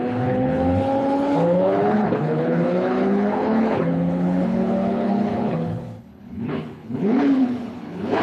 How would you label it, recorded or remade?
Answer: remade